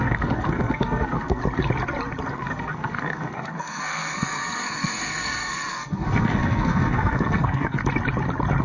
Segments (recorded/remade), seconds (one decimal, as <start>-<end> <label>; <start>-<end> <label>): 0.0-1.4 remade; 1.4-2.3 recorded; 2.3-7.8 remade; 7.8-8.6 recorded